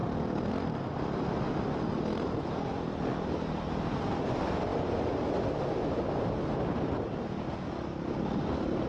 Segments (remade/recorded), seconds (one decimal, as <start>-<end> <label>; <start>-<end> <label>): 0.0-8.9 recorded